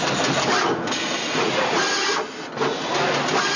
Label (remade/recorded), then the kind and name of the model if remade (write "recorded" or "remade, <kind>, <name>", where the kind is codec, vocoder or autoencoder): recorded